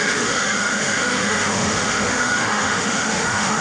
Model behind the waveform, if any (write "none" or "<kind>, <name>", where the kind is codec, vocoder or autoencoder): autoencoder, DAC-VAE